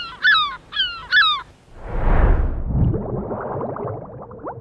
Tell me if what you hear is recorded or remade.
recorded